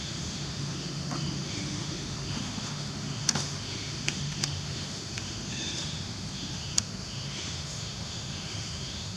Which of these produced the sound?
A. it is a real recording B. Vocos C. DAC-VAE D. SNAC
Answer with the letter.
C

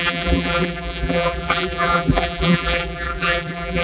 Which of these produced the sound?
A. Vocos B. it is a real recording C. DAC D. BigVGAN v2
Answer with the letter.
D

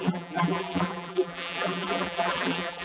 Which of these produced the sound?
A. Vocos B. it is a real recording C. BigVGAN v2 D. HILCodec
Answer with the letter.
C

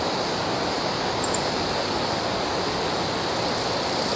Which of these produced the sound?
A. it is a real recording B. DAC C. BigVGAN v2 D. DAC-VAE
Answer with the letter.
A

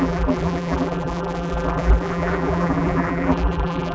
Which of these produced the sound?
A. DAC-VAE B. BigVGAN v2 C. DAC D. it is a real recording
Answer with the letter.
B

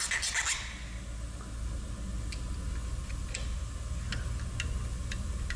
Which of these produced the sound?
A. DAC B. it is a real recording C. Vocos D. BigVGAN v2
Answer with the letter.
B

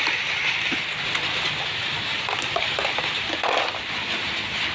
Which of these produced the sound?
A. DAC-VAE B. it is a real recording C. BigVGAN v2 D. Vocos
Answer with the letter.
B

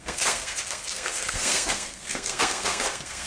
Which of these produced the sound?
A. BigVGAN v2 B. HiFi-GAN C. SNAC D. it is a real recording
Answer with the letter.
C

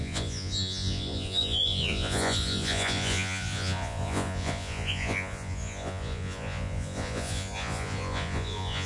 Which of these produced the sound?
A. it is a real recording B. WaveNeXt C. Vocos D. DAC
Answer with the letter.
C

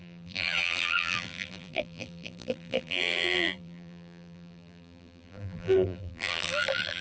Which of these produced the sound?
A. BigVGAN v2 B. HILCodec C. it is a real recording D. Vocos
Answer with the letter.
A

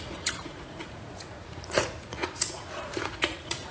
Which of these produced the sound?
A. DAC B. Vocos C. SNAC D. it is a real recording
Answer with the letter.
B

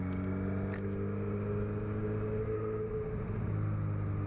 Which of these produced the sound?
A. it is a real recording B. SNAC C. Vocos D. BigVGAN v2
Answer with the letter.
A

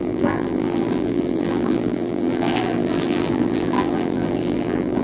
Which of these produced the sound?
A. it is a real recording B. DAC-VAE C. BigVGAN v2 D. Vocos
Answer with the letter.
C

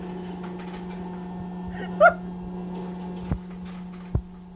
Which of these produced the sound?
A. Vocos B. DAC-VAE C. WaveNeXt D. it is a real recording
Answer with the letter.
D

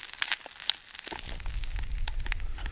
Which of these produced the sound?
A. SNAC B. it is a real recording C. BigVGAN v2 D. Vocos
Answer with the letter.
B